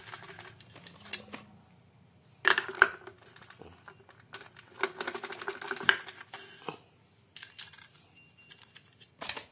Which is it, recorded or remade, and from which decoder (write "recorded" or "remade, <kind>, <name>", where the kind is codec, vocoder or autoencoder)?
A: recorded